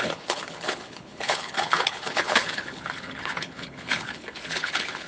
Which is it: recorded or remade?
remade